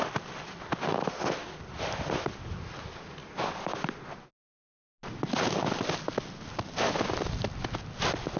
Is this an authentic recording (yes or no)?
yes